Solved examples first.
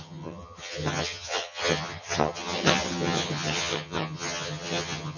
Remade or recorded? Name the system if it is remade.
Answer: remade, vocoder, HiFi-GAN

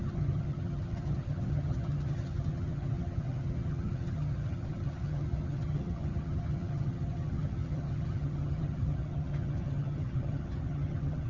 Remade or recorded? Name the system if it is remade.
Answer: remade, vocoder, HiFi-GAN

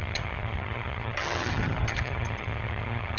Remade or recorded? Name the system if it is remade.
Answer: remade, vocoder, HiFi-GAN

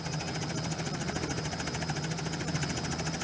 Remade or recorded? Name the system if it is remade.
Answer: recorded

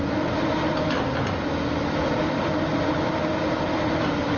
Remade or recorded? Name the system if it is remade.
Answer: recorded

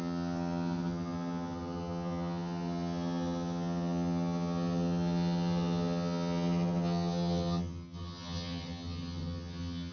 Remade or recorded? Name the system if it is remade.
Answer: remade, vocoder, HiFi-GAN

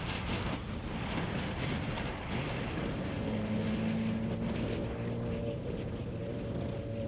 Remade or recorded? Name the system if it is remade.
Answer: recorded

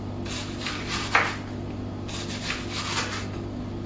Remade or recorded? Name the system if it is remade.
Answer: recorded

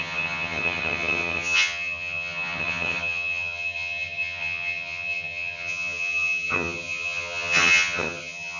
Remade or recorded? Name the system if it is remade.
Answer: remade, vocoder, HiFi-GAN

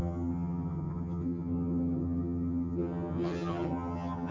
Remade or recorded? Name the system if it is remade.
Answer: remade, vocoder, HiFi-GAN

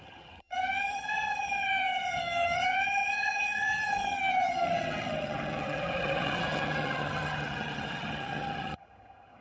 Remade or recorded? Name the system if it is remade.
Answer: remade, vocoder, HiFi-GAN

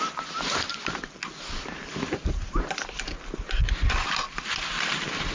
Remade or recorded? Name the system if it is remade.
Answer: recorded